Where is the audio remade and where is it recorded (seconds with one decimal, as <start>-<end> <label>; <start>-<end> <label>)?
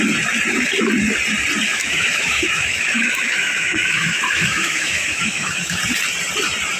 0.0-1.7 recorded; 1.7-5.8 remade; 5.8-6.8 recorded